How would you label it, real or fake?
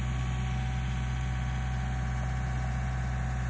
real